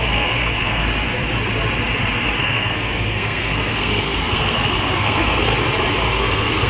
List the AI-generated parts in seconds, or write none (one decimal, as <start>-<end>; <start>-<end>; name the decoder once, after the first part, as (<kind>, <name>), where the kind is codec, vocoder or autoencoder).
0.0-0.8 (codec, SNAC); 2.3-5.5; 6.2-6.7